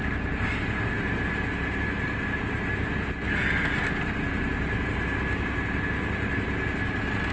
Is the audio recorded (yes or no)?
yes